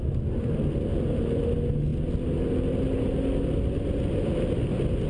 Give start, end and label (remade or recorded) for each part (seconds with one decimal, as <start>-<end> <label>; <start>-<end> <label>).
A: 0.0-5.1 recorded